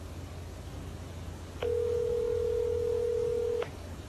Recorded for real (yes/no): no